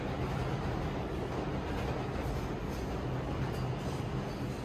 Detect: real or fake real